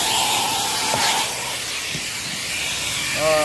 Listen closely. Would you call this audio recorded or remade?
recorded